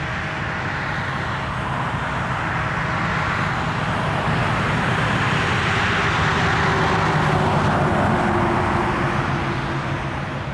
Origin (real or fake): real